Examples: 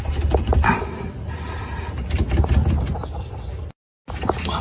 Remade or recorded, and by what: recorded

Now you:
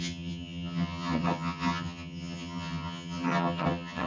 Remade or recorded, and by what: remade, vocoder, HiFi-GAN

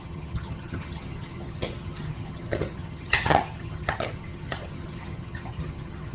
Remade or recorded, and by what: remade, vocoder, HiFi-GAN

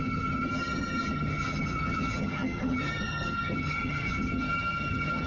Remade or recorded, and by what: remade, vocoder, HiFi-GAN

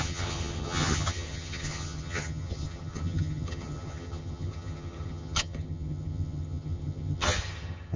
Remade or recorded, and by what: remade, vocoder, HiFi-GAN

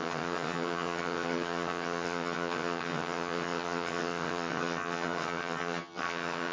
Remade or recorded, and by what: remade, vocoder, HiFi-GAN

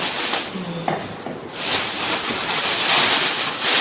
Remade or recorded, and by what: recorded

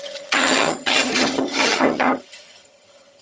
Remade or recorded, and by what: remade, vocoder, HiFi-GAN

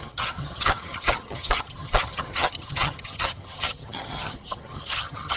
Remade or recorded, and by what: remade, vocoder, HiFi-GAN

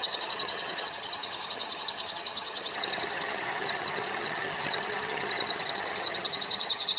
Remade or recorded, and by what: remade, vocoder, HiFi-GAN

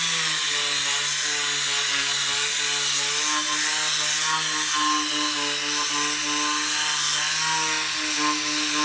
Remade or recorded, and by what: recorded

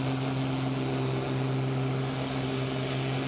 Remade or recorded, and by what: recorded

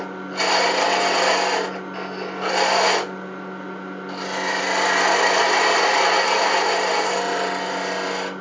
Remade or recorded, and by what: recorded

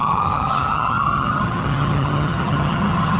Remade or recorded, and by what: remade, vocoder, HiFi-GAN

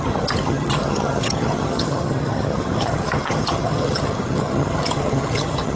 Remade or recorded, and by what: remade, vocoder, HiFi-GAN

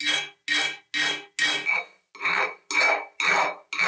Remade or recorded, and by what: recorded